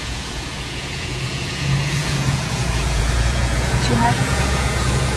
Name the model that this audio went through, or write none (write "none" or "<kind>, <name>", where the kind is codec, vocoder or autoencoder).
vocoder, Vocos